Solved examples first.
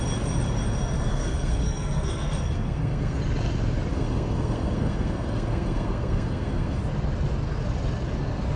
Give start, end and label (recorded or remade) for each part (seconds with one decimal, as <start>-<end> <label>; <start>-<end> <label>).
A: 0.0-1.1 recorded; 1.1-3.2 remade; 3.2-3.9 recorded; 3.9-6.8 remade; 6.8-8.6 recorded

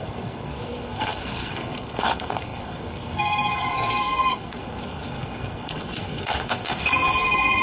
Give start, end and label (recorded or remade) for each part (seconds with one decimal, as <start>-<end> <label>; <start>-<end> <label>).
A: 0.0-7.6 remade

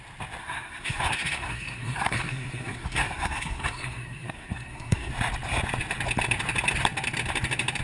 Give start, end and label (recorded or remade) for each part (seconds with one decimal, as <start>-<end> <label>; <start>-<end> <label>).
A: 0.0-0.4 recorded; 0.4-5.1 remade; 5.1-7.8 recorded